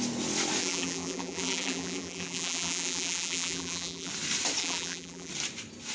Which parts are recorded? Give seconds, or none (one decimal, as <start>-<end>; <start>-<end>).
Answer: 0.0-0.6; 4.1-4.6; 5.3-5.9